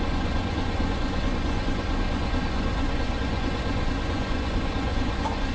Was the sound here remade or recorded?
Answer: remade